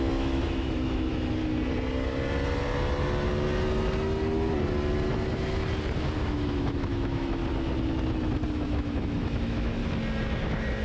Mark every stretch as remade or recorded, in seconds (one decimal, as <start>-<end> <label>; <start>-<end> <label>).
0.0-1.4 remade; 1.4-6.2 recorded; 6.2-7.4 remade; 7.4-8.5 recorded; 8.5-9.8 remade; 9.8-10.4 recorded; 10.4-10.8 remade